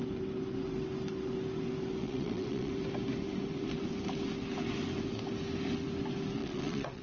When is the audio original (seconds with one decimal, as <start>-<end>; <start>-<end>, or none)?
0.0-2.0; 2.7-6.4